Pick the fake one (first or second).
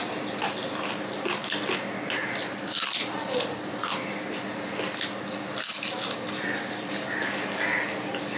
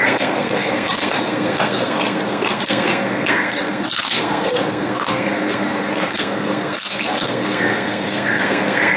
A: second